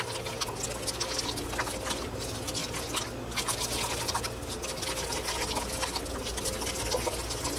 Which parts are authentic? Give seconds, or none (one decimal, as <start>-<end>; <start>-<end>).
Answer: 0.0-7.6